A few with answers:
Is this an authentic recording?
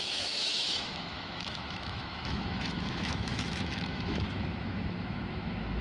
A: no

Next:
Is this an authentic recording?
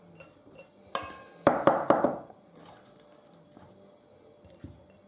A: yes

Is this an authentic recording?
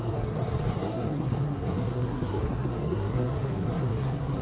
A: no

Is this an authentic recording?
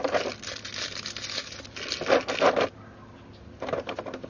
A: yes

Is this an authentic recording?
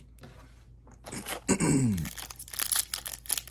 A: yes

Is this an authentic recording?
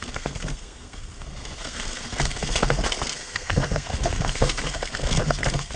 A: no